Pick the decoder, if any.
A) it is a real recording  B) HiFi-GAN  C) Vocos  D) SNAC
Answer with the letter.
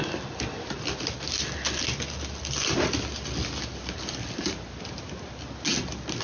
A